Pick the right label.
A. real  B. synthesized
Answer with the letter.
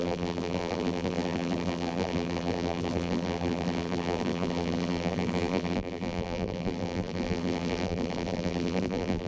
B